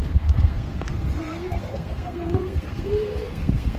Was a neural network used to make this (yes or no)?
yes